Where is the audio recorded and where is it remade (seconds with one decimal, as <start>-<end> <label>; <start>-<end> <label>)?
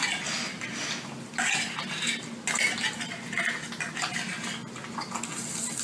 0.0-5.8 recorded